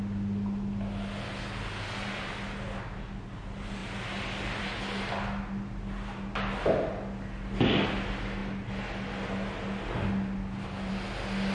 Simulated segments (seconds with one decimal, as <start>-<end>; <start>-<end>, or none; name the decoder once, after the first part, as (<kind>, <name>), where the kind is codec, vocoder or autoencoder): 3.8-4.6 (vocoder, BigVGAN v2)